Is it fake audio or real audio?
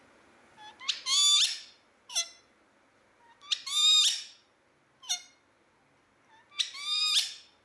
real